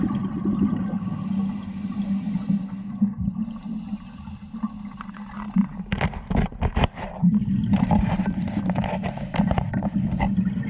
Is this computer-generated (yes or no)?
no